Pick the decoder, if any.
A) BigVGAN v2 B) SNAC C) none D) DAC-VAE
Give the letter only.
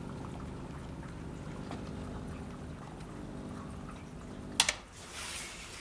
C